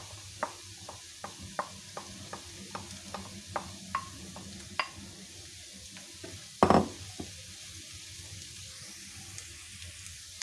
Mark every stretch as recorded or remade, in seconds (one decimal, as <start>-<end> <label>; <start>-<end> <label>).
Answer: 0.0-10.4 recorded